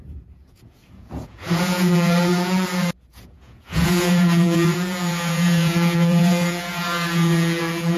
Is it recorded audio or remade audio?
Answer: remade